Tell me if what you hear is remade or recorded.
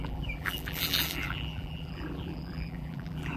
remade